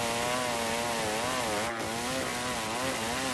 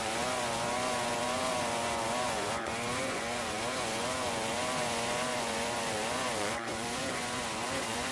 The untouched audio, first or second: first